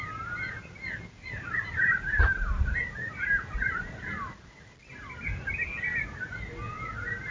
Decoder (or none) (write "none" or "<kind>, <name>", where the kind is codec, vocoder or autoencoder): none